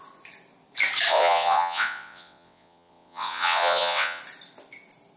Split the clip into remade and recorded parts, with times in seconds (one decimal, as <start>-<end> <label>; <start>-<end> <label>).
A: 0.0-1.1 recorded; 1.1-4.2 remade; 4.2-5.2 recorded